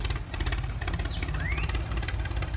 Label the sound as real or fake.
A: real